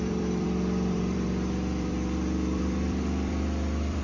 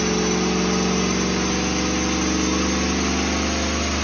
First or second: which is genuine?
second